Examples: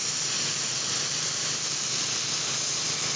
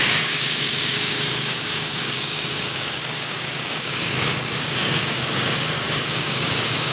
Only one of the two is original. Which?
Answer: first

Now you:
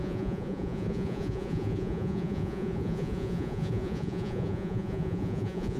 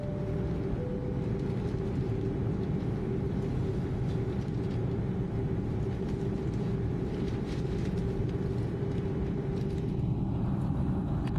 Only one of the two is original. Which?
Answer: second